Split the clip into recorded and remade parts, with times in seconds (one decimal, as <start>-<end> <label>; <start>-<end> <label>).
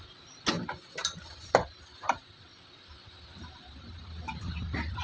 0.0-5.0 recorded